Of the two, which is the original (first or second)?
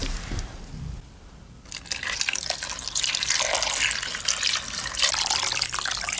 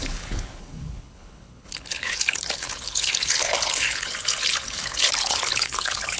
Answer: first